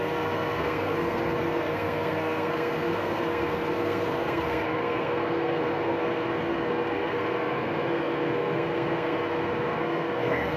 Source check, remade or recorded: remade